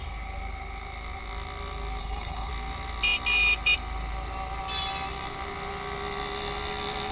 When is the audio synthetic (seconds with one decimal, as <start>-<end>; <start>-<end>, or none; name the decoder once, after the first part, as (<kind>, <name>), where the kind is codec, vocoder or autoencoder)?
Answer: 2.0-2.5 (codec, HILCodec)